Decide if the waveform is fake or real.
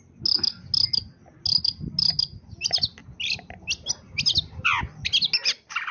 real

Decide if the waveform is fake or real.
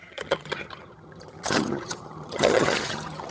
fake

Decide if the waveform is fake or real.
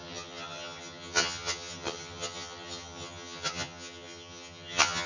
fake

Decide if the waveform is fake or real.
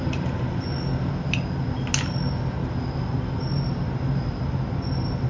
real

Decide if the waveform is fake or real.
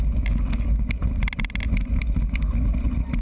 real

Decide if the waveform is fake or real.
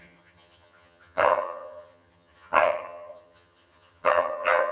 fake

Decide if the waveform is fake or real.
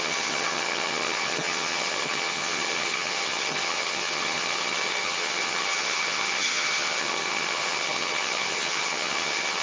fake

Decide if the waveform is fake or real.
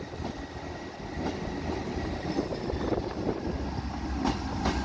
real